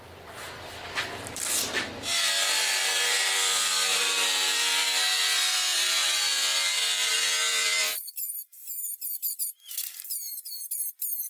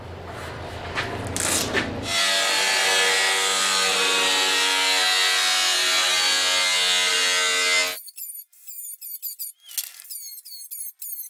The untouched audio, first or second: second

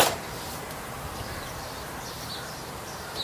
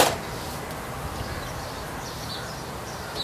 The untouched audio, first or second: second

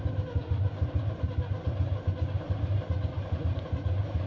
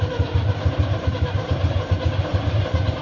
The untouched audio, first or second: first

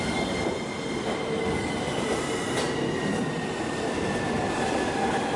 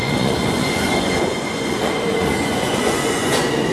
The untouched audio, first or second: first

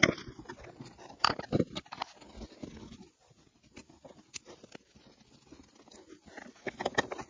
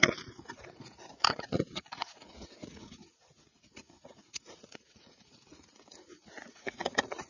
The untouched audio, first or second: first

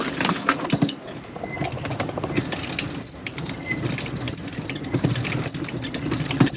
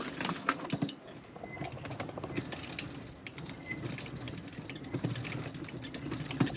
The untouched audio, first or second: second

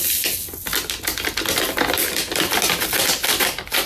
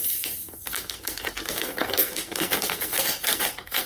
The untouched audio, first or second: first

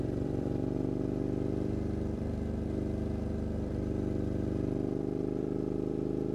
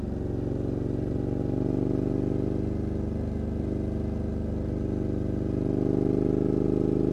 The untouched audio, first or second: second